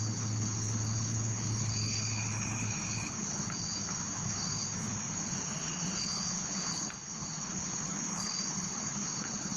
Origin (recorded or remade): remade